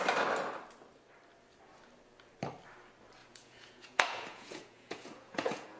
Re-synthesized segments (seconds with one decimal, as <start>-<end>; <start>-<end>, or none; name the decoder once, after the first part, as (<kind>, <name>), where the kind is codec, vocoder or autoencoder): 3.2-5.8 (vocoder, Vocos)